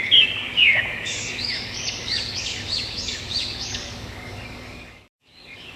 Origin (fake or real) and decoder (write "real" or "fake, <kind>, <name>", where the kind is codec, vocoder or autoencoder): fake, codec, DAC